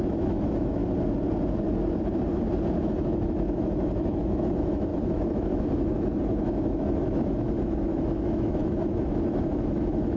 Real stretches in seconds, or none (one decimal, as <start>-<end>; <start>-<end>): 0.8-2.8